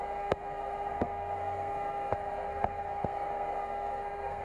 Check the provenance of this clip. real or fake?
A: fake